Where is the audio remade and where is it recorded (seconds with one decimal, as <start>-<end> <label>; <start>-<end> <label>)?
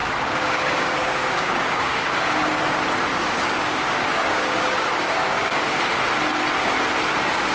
0.0-2.6 remade; 2.6-3.1 recorded; 3.1-5.8 remade; 5.8-7.5 recorded